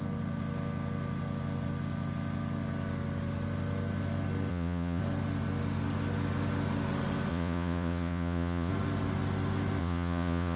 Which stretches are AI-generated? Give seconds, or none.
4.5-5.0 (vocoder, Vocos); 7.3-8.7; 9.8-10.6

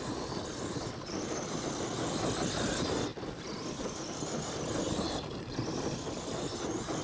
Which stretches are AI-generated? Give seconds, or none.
3.1-3.9 (vocoder, BigVGAN v2)

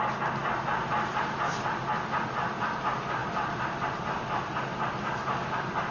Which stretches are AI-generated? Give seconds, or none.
0.4-1.8 (vocoder, BigVGAN v2); 3.2-3.8; 4.7-5.2

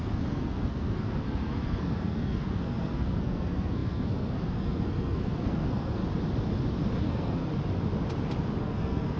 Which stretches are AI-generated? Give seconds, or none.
0.0-6.0 (codec, SNAC); 7.0-7.5; 8.6-9.2

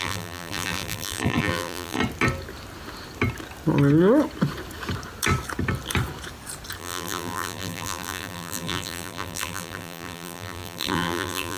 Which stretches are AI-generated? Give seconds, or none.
0.0-2.0 (vocoder, BigVGAN v2); 6.8-11.6

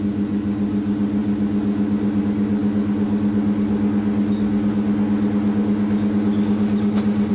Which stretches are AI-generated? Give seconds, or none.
none